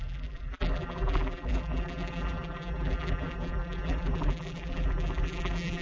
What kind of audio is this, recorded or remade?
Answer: remade